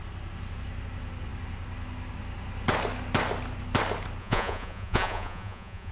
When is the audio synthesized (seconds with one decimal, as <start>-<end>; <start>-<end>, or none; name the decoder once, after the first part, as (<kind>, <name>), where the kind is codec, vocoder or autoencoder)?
4.2-5.9 (vocoder, Vocos)